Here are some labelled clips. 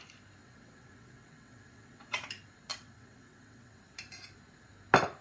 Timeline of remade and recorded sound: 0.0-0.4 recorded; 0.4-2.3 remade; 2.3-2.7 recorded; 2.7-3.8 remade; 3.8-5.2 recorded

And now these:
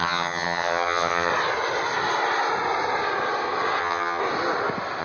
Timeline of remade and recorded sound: 0.0-1.3 remade; 1.3-3.8 recorded; 3.8-4.2 remade; 4.2-5.0 recorded

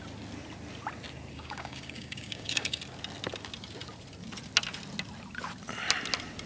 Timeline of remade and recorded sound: 0.0-1.3 recorded; 1.3-2.8 remade; 2.8-6.5 recorded

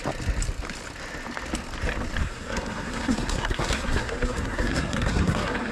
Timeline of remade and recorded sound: 0.0-2.2 recorded; 2.2-5.7 remade

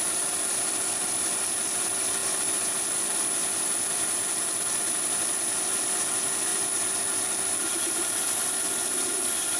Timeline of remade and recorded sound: 0.0-9.6 remade

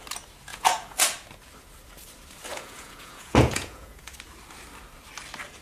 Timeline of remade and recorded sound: 0.0-0.5 recorded; 0.5-1.0 remade; 1.0-2.5 recorded; 2.5-4.1 remade; 4.1-5.6 recorded

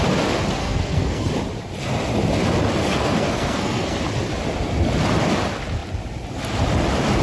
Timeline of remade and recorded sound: 0.0-0.6 recorded; 0.6-1.3 remade; 1.3-2.8 recorded; 2.8-4.0 remade; 4.0-7.2 recorded